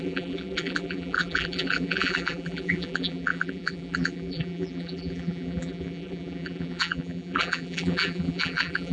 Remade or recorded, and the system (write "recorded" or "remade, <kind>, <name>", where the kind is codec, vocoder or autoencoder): remade, vocoder, BigVGAN v2